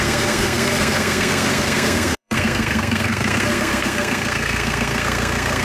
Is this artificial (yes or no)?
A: yes